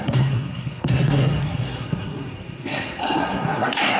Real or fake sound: fake